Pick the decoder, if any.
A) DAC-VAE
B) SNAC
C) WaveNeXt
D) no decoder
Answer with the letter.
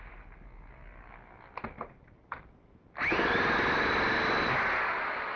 D